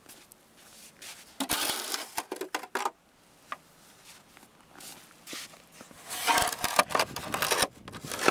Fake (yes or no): no